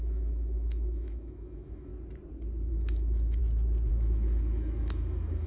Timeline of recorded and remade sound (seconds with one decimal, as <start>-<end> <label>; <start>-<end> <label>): 0.0-1.9 remade; 1.9-2.7 recorded; 2.7-3.4 remade; 3.4-3.9 recorded; 3.9-5.5 remade